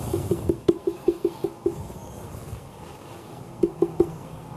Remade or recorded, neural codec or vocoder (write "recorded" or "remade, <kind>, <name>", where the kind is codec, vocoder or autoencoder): remade, codec, SNAC